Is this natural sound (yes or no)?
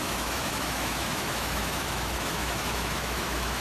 no